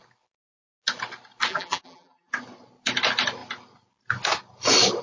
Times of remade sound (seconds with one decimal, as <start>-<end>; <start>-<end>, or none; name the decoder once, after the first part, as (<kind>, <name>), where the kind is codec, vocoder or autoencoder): 1.5-2.3 (vocoder, BigVGAN v2)